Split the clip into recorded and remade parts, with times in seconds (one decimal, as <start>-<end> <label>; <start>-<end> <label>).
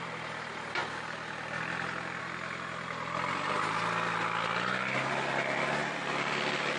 0.0-5.8 recorded; 5.8-6.8 remade